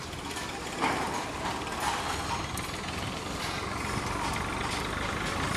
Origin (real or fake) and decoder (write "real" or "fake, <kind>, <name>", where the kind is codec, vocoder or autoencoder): fake, vocoder, BigVGAN v2